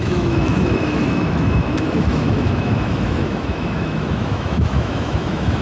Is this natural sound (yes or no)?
no